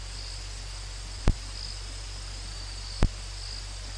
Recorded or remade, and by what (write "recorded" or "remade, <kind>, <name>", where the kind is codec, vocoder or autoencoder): recorded